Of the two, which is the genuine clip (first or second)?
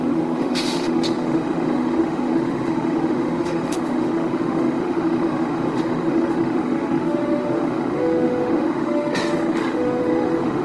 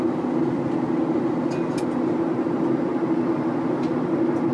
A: second